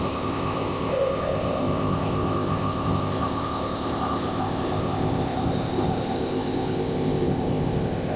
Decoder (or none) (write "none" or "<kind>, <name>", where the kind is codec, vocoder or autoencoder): codec, ZipCodec